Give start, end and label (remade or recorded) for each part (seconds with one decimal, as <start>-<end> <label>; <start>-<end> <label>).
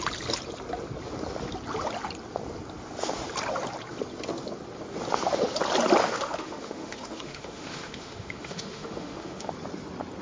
0.0-6.0 recorded; 6.0-9.5 remade; 9.5-10.2 recorded